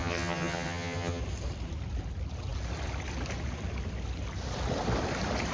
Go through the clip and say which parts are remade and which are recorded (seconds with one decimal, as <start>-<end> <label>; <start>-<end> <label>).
0.0-1.2 remade; 1.2-5.5 recorded